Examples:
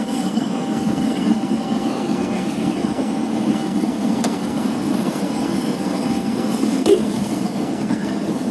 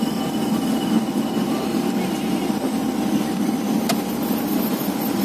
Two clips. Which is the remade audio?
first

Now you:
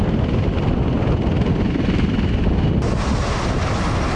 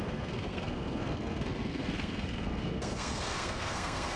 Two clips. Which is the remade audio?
second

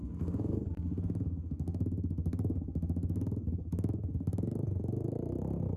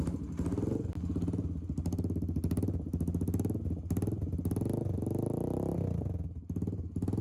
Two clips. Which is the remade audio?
first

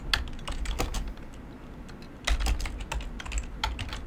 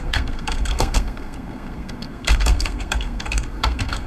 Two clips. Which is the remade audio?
second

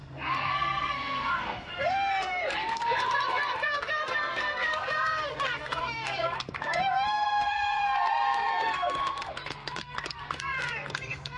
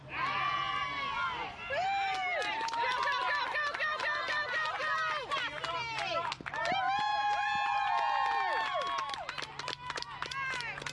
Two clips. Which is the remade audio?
first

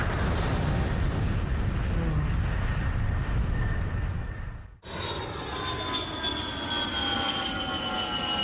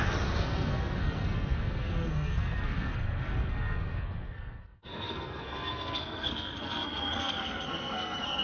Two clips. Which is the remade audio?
second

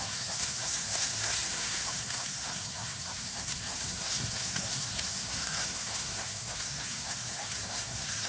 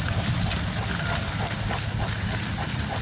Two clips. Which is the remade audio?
first